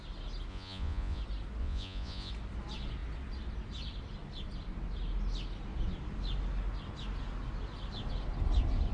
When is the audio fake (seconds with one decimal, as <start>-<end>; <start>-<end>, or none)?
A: 0.5-1.2; 1.6-2.3